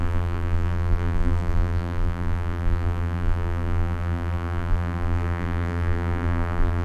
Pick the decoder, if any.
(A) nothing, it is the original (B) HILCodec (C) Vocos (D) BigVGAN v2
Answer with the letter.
D